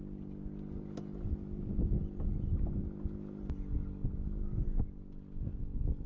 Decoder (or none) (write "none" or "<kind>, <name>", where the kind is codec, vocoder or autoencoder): none